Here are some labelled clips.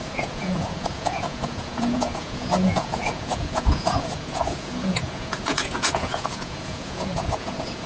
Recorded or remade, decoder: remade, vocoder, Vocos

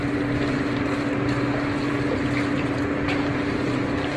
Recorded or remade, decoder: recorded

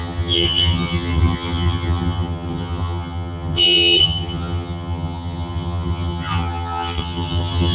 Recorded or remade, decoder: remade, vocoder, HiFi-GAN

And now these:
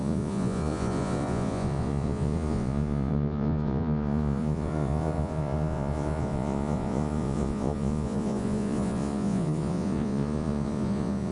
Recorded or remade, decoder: remade, vocoder, Vocos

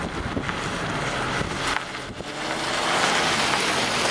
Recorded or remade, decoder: recorded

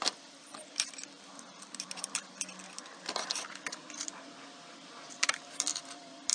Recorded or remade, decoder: remade, vocoder, BigVGAN v2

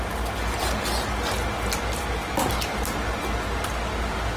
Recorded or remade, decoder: recorded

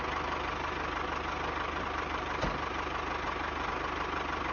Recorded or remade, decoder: recorded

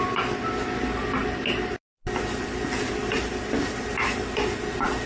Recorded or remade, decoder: remade, vocoder, BigVGAN v2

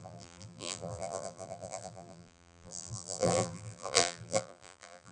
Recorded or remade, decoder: remade, vocoder, BigVGAN v2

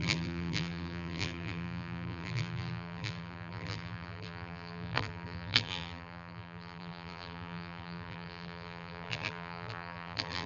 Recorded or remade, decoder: remade, vocoder, BigVGAN v2